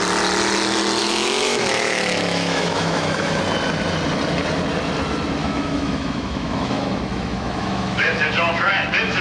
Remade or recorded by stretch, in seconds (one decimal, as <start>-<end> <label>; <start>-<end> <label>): 0.0-1.0 recorded; 1.0-3.4 remade; 3.4-5.4 recorded; 5.4-9.2 remade